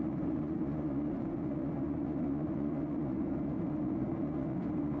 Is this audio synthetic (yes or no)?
yes